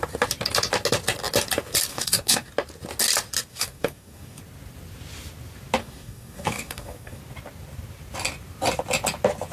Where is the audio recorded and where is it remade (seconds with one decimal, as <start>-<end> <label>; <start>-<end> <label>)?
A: 0.0-1.9 recorded; 1.9-2.5 remade; 2.5-3.5 recorded; 3.5-4.4 remade; 4.4-5.8 recorded; 5.8-7.2 remade; 7.2-9.5 recorded